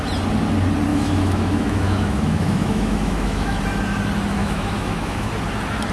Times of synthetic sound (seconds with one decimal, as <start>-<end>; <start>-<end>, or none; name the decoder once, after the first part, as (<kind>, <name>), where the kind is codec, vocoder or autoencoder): 0.9-3.6 (autoencoder, DAC-VAE); 4.4-5.3